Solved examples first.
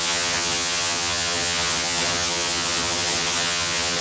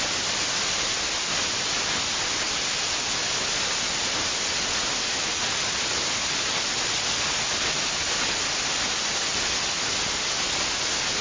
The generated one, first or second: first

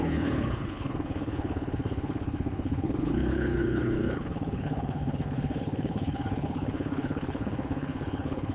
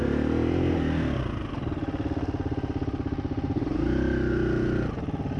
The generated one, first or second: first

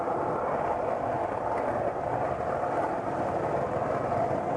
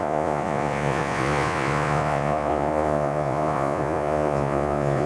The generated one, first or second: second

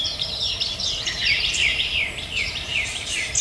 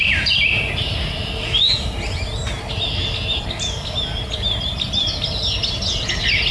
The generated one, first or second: first